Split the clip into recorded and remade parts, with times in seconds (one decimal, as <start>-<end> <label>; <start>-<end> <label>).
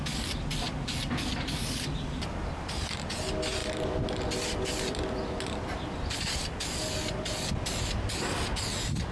0.0-9.1 recorded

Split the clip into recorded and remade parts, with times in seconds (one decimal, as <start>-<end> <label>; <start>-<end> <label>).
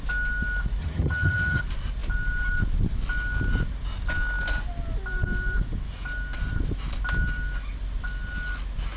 0.0-0.8 recorded; 0.8-1.6 remade; 1.6-9.0 recorded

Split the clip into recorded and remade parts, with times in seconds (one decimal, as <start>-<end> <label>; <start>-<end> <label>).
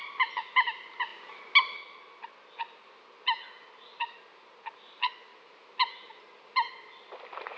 0.0-7.6 recorded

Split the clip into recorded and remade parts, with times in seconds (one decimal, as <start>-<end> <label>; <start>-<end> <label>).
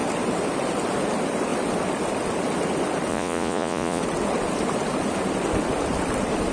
0.0-3.1 recorded; 3.1-4.0 remade; 4.0-6.5 recorded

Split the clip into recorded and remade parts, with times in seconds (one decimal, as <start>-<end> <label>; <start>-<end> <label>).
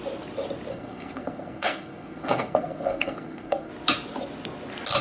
0.0-0.7 recorded; 0.7-3.7 remade; 3.7-5.0 recorded